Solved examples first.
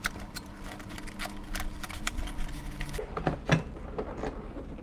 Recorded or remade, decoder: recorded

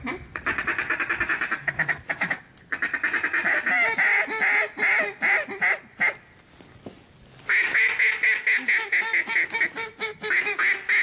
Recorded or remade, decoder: recorded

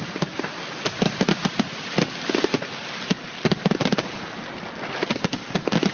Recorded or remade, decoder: recorded